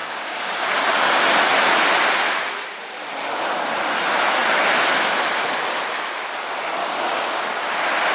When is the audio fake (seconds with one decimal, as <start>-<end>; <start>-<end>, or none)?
0.0-0.6; 6.8-7.4